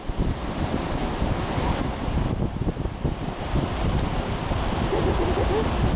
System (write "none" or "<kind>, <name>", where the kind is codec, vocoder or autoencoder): none